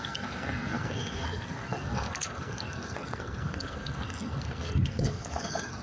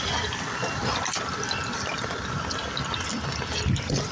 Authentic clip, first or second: second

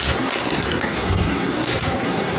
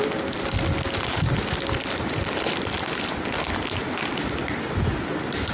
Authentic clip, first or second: second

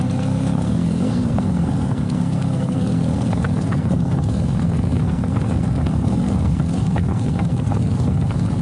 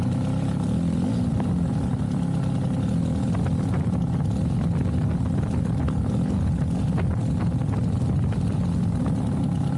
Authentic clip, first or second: second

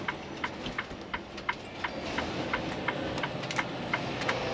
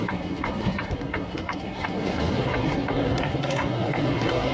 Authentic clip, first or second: first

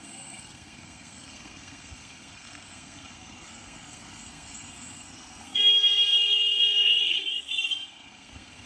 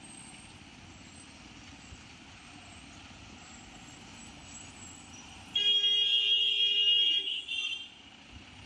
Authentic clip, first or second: second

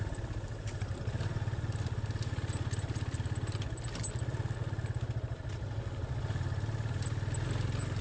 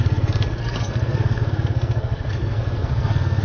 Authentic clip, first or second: first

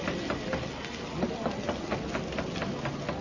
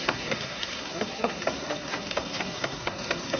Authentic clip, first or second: first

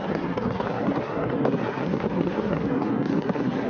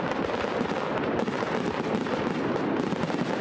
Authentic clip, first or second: second